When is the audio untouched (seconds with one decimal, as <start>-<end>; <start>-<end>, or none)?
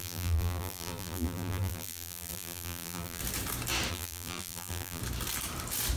3.2-3.9; 5.0-6.0